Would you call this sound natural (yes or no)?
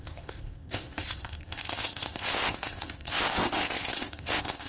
no